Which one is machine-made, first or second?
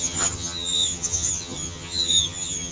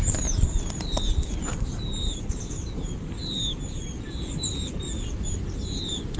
first